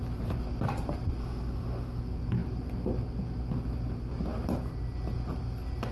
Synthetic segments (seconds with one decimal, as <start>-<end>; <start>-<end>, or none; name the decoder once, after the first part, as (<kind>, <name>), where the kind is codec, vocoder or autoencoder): 1.2-2.0 (autoencoder, DAC-VAE)